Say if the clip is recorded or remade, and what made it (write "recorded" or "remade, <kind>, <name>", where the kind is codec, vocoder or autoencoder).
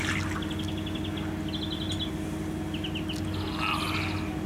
recorded